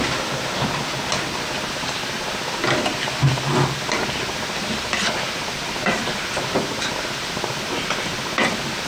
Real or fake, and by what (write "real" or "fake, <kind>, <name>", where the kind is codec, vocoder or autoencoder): real